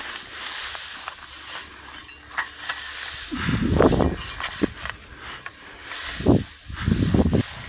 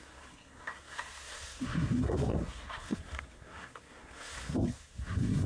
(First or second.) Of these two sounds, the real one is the first